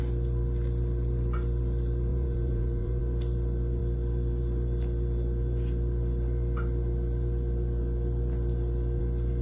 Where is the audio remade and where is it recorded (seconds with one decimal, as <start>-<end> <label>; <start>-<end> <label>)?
0.0-2.1 recorded; 2.1-3.0 remade; 3.0-9.4 recorded